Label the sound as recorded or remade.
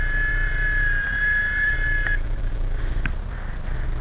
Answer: recorded